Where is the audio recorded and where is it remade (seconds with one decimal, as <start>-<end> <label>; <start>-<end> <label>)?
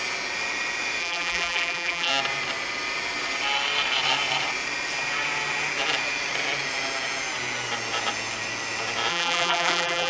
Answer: 0.0-1.0 recorded; 1.0-2.1 remade; 2.1-9.1 recorded; 9.1-10.1 remade